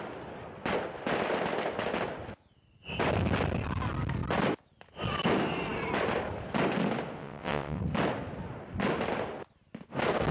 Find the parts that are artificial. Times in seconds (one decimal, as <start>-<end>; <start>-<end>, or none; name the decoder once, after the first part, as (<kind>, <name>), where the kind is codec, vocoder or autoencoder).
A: 7.2-7.8 (vocoder, WaveNeXt)